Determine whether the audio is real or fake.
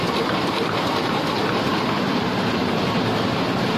real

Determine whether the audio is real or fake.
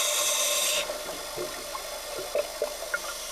real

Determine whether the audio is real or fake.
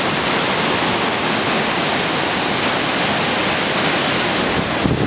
real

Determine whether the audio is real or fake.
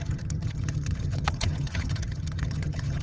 fake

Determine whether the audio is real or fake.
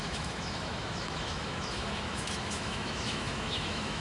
fake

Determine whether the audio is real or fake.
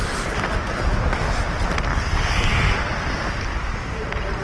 real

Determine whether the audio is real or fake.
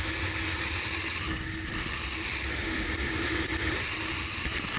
real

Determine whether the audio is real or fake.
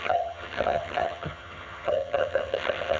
fake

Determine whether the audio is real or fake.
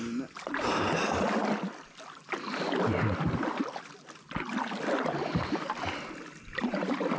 real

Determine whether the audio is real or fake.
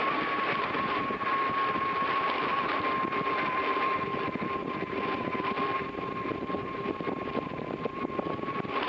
real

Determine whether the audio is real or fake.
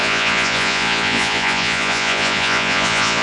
fake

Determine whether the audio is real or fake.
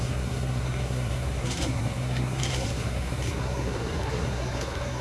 fake